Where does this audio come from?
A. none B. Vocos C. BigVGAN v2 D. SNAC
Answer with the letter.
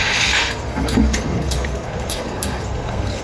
D